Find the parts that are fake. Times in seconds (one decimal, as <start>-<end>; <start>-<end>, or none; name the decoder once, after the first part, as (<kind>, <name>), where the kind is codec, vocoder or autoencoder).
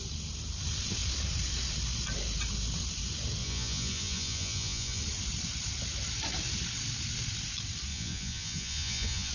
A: 3.4-5.0 (vocoder, Vocos); 7.9-9.3